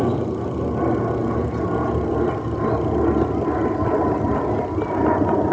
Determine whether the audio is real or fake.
real